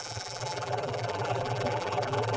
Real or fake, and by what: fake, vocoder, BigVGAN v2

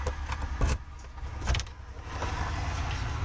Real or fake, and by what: real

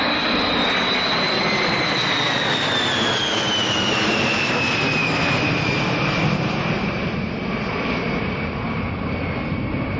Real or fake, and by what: real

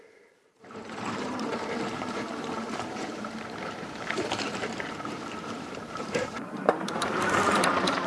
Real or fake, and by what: fake, vocoder, BigVGAN v2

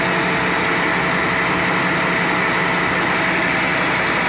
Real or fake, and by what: real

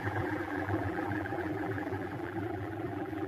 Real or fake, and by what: fake, vocoder, BigVGAN v2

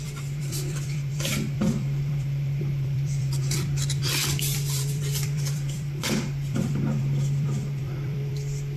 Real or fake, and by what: fake, vocoder, BigVGAN v2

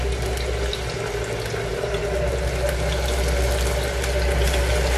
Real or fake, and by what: real